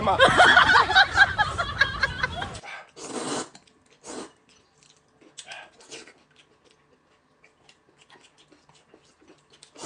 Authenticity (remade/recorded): recorded